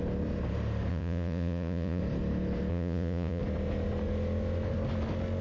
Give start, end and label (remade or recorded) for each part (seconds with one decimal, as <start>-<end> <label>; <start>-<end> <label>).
0.0-0.9 recorded; 0.9-2.0 remade; 2.0-2.7 recorded; 2.7-3.4 remade; 3.4-5.4 recorded